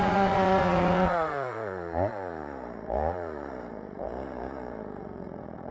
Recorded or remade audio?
remade